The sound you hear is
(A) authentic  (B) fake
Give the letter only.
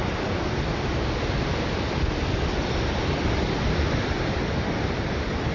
A